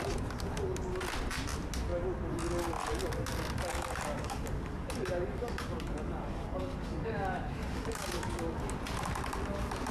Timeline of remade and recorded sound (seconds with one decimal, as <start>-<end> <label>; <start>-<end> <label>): 0.0-3.7 recorded; 3.7-8.4 remade; 8.4-9.9 recorded